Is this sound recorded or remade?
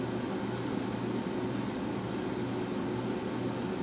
recorded